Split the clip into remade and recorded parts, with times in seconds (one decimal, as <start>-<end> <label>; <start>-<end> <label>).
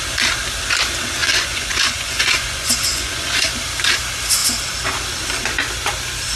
0.0-1.2 recorded; 1.2-3.5 remade; 3.5-6.4 recorded